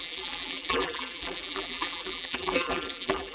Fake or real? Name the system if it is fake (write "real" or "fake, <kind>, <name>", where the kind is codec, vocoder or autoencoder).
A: fake, vocoder, BigVGAN v2